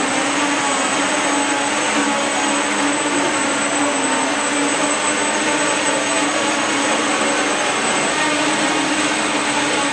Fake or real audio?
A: real